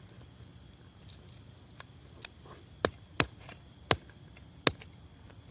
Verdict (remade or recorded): recorded